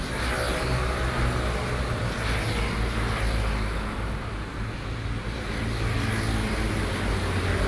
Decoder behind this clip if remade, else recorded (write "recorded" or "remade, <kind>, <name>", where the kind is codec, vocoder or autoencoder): recorded